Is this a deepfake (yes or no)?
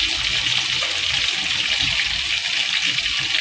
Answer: no